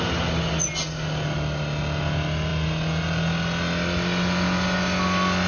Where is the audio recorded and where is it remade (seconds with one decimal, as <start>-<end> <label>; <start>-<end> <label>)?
0.0-5.5 recorded

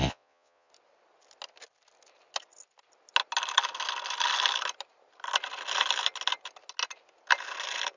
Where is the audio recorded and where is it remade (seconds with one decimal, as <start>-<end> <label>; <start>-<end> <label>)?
0.0-0.7 remade; 0.7-8.0 recorded

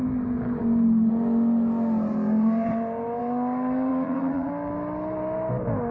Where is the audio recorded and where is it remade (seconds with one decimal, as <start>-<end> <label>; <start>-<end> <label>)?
0.0-3.9 recorded; 3.9-4.5 remade; 4.5-5.9 recorded

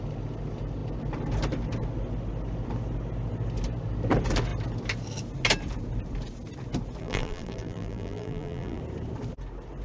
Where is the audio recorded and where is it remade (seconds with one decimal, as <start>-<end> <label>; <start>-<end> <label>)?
0.0-7.0 recorded; 7.0-8.8 remade; 8.8-9.8 recorded

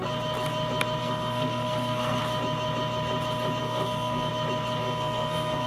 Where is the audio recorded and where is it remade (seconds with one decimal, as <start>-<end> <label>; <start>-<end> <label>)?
0.0-1.0 recorded; 1.0-2.2 remade; 2.2-3.6 recorded; 3.6-4.3 remade; 4.3-4.8 recorded; 4.8-5.7 remade